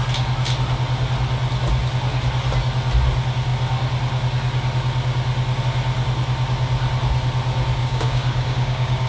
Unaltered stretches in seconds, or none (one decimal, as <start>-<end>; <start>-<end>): 0.0-7.8